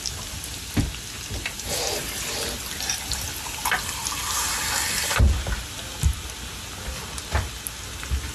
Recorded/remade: recorded